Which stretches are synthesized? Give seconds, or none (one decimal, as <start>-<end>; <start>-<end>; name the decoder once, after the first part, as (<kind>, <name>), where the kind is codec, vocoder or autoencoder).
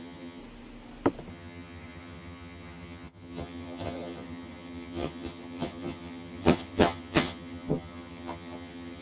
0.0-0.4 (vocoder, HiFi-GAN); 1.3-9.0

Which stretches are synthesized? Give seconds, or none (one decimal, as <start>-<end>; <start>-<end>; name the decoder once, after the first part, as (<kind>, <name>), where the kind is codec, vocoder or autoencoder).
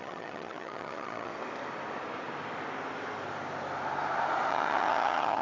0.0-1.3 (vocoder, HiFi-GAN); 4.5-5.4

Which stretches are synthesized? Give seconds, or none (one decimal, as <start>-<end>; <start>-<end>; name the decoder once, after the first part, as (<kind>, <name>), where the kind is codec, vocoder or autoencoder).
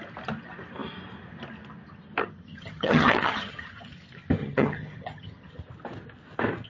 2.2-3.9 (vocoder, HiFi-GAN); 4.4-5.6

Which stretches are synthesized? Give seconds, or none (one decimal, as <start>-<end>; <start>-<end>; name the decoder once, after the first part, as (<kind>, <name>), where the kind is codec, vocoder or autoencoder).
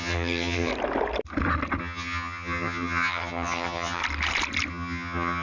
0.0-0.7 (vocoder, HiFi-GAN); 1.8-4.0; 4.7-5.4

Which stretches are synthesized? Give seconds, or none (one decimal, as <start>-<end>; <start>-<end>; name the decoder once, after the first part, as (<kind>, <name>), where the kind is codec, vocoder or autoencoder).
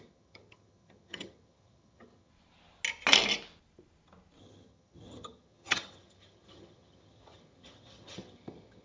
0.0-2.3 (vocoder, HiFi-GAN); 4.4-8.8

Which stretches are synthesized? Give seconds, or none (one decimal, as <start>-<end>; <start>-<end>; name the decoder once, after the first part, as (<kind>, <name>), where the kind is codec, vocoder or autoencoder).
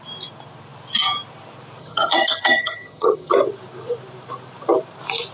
1.8-3.3 (vocoder, HiFi-GAN)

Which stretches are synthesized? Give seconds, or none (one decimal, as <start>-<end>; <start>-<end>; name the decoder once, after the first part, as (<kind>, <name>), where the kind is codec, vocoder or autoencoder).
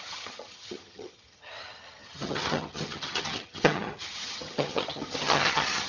0.0-5.9 (vocoder, HiFi-GAN)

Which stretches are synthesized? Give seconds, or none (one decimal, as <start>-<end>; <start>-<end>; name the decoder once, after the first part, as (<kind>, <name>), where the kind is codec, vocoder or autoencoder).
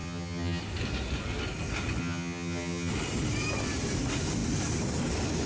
0.0-0.6 (vocoder, HiFi-GAN); 2.0-2.9